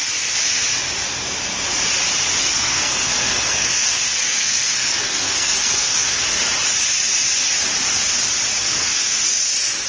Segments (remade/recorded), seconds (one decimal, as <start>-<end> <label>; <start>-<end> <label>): 0.0-2.4 recorded; 2.4-6.2 remade; 6.2-8.6 recorded; 8.6-9.4 remade; 9.4-9.9 recorded